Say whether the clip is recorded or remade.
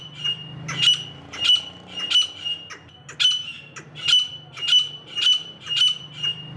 recorded